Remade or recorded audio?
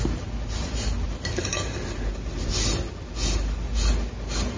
recorded